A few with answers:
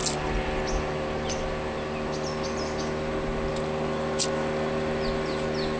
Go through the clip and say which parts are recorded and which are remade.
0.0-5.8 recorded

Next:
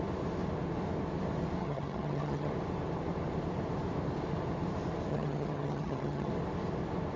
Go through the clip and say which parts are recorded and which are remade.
0.0-1.6 recorded; 1.6-2.5 remade; 2.5-5.1 recorded; 5.1-6.3 remade; 6.3-7.2 recorded

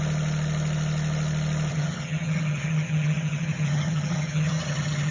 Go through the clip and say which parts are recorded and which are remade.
0.0-1.7 recorded; 1.7-5.1 remade

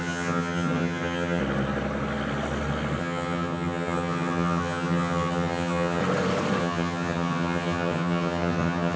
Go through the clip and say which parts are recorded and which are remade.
0.0-1.4 remade; 1.4-3.0 recorded; 3.0-6.0 remade; 6.0-6.6 recorded; 6.6-9.0 remade

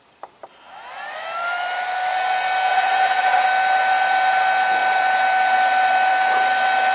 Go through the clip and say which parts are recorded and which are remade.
0.0-2.7 recorded; 2.7-3.5 remade; 3.5-6.9 recorded

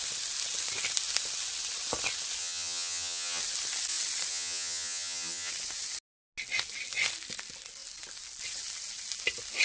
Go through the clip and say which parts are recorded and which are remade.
0.0-2.4 recorded; 2.4-3.4 remade; 3.4-4.3 recorded; 4.3-5.5 remade; 5.5-9.6 recorded

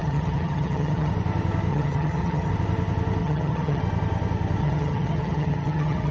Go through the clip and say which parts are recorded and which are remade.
0.0-1.1 remade; 1.1-1.7 recorded; 1.7-2.5 remade; 2.5-3.2 recorded; 3.2-3.8 remade; 3.8-4.6 recorded; 4.6-6.1 remade